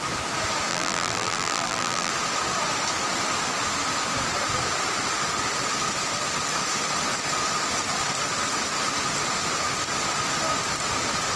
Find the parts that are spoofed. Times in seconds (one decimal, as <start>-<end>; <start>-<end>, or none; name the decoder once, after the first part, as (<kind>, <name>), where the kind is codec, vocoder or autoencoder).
0.7-2.1 (vocoder, BigVGAN v2)

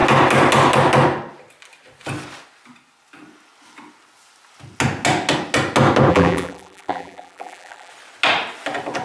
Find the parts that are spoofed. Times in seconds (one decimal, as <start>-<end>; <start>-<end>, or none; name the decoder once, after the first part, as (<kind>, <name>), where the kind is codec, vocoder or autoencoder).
6.1-7.9 (vocoder, BigVGAN v2)

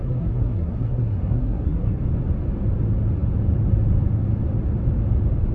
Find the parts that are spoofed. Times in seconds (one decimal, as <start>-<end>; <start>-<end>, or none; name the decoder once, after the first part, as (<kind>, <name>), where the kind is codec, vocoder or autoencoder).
0.0-2.0 (codec, SNAC)